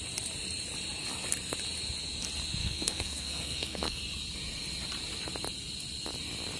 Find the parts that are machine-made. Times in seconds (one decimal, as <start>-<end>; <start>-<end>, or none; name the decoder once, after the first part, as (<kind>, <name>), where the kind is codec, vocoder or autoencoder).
2.6-4.0 (codec, SNAC)